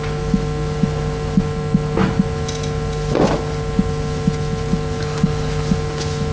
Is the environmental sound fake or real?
real